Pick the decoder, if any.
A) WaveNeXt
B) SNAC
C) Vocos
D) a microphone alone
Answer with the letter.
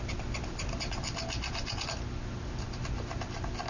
D